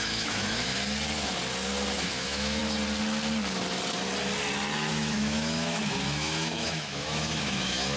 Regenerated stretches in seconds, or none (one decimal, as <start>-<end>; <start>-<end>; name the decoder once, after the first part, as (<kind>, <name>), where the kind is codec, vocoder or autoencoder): 0.0-0.7 (autoencoder, DAC-VAE); 1.9-2.6; 4.9-8.0